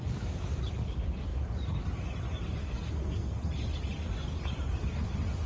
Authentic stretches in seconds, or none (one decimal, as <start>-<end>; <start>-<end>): 0.0-2.6; 3.4-5.5